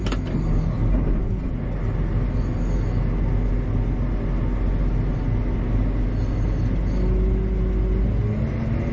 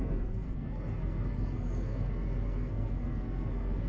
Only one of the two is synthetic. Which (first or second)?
second